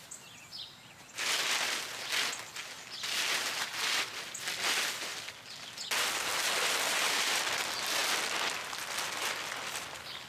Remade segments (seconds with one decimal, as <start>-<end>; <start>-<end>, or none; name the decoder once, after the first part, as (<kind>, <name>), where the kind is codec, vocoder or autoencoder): none